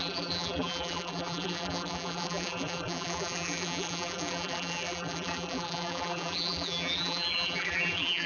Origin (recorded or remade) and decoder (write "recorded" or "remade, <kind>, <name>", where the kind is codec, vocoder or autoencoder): remade, vocoder, BigVGAN v2